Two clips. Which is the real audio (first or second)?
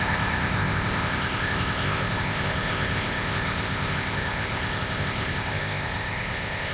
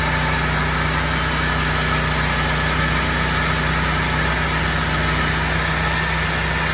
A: second